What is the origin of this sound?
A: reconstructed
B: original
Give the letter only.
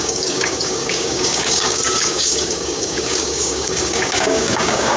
A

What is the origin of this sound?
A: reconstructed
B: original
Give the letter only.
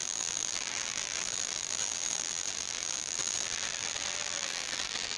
A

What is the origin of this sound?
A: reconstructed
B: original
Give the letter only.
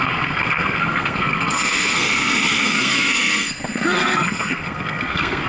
A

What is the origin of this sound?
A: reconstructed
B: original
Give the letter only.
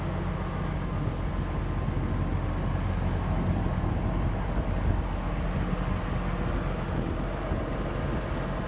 B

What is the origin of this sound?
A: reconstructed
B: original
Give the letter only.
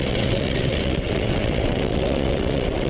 A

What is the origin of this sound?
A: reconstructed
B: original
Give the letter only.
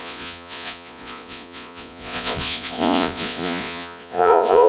A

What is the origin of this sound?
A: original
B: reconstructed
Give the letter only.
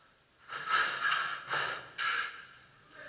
A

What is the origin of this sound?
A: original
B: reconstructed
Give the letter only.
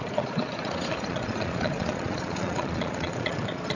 B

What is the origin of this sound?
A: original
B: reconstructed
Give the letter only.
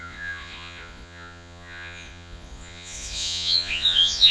B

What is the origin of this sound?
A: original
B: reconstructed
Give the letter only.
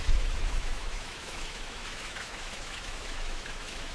B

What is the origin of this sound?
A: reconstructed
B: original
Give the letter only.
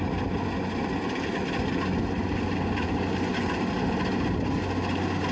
B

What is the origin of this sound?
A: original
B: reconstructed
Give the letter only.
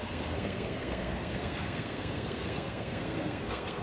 B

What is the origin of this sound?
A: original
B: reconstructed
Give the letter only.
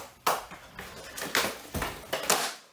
A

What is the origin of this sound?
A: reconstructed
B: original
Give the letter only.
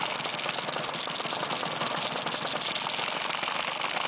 B